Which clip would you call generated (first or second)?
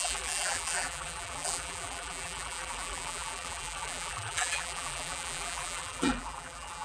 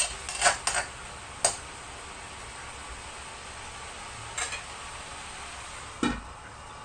first